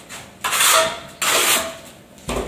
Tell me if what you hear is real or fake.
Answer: real